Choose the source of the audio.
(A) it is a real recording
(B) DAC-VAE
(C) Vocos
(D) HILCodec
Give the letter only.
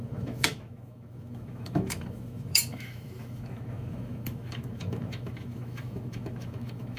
B